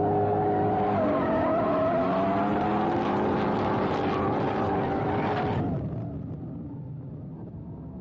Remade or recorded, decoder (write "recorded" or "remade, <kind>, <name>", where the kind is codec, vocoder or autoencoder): recorded